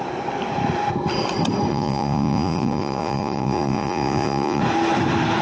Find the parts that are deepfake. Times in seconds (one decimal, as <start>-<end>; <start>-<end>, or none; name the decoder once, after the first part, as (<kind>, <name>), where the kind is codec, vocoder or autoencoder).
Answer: 1.7-4.6 (vocoder, Vocos)